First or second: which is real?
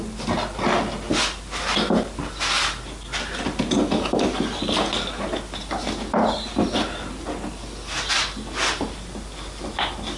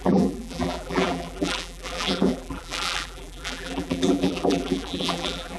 first